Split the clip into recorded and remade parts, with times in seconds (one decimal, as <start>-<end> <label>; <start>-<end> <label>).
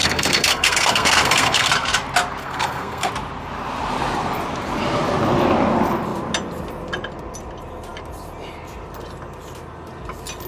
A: 0.0-1.7 remade; 1.7-2.4 recorded; 2.4-3.1 remade; 3.1-10.5 recorded